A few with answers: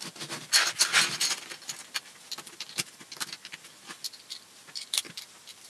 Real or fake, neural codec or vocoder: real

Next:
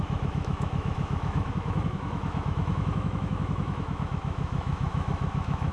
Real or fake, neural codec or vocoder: fake, autoencoder, DAC-VAE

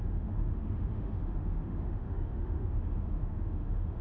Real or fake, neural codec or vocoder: fake, autoencoder, DAC-VAE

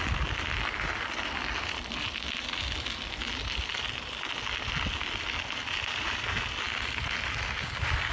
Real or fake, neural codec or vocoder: real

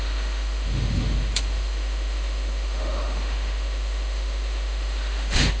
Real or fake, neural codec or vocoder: fake, autoencoder, DAC-VAE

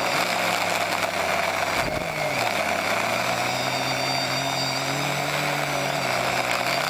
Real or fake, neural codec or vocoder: real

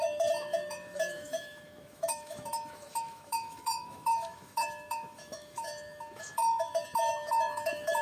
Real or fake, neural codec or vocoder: fake, autoencoder, DAC-VAE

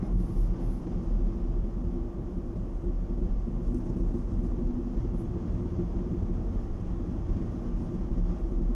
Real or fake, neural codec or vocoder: real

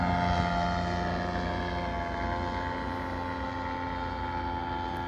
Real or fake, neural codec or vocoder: real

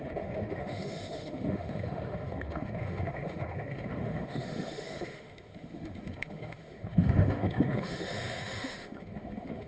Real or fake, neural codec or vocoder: fake, autoencoder, DAC-VAE